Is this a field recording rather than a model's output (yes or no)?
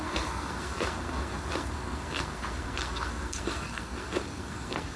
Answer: no